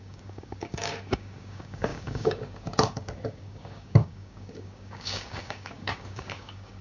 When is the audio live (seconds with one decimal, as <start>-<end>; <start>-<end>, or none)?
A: none